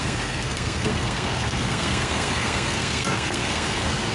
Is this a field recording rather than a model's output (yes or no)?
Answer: no